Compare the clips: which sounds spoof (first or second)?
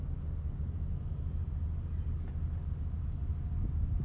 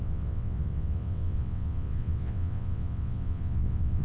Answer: second